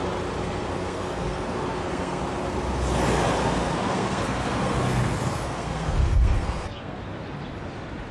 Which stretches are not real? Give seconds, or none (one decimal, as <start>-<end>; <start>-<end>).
0.4-2.2; 3.4-7.0